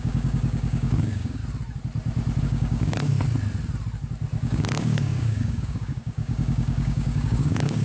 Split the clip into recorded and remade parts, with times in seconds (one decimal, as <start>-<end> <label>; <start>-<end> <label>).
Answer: 0.0-1.4 remade; 1.4-2.4 recorded; 2.4-3.1 remade; 3.1-4.4 recorded; 4.4-7.8 remade